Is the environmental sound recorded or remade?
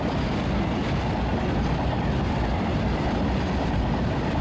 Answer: recorded